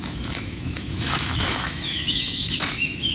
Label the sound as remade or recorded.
remade